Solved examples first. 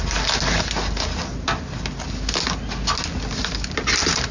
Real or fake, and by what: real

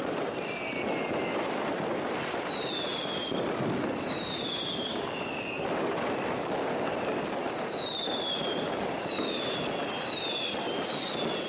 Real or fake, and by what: real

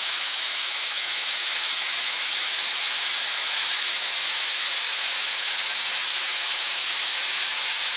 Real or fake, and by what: fake, autoencoder, DAC-VAE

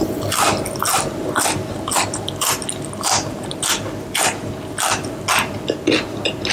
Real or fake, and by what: real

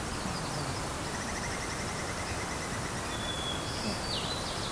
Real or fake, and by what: real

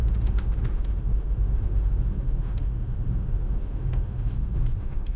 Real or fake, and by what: fake, autoencoder, DAC-VAE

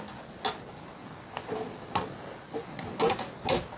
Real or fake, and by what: real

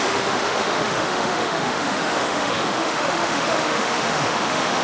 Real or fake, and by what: fake, autoencoder, DAC-VAE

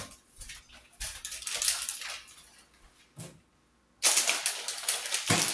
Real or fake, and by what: real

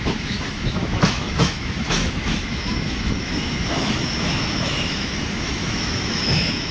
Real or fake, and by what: fake, autoencoder, DAC-VAE